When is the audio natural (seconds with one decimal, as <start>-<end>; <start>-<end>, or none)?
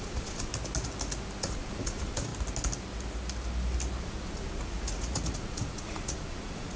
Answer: 0.5-1.4; 2.3-4.0